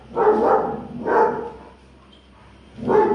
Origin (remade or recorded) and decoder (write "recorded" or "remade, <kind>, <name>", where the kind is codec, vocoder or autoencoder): recorded